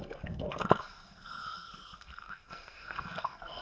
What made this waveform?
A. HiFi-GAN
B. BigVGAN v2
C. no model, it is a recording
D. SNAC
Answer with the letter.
D